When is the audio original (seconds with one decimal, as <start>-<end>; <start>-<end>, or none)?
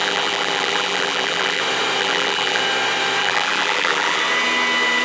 1.6-2.0; 2.6-3.2; 4.2-5.0